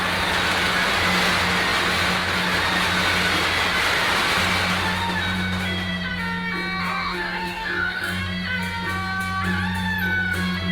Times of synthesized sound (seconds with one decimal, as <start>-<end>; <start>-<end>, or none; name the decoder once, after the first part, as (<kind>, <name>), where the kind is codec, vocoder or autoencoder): 6.8-8.2 (codec, DAC)